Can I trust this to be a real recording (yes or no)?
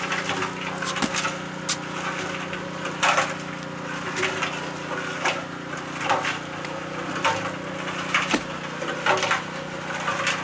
yes